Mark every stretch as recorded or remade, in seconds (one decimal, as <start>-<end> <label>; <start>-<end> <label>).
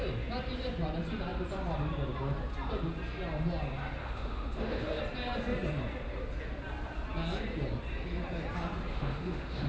0.0-4.0 recorded; 4.0-5.0 remade; 5.0-8.9 recorded; 8.9-9.7 remade